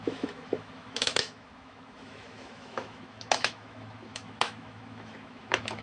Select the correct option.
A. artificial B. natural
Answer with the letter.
A